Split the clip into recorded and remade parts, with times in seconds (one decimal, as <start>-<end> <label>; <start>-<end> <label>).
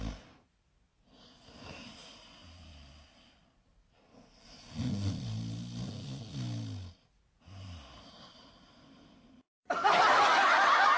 0.0-11.0 recorded